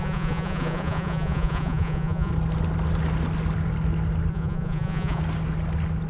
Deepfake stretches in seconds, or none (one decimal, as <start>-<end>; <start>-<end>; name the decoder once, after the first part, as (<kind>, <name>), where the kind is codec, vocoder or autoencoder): 0.0-2.3 (vocoder, Vocos); 4.3-5.2